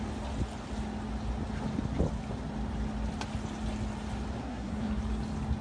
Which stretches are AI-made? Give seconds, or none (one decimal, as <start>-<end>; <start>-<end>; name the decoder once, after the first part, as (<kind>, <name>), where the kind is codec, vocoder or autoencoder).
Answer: 4.4-5.0 (codec, SNAC)